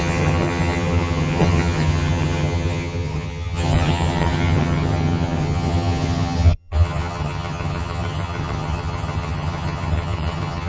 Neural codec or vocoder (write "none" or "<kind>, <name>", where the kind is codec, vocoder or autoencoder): vocoder, HiFi-GAN